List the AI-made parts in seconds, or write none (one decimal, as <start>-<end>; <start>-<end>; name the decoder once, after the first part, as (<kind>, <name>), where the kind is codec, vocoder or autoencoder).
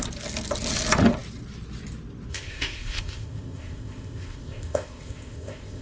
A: 2.3-5.8 (codec, ZipCodec)